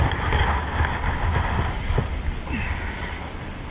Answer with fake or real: real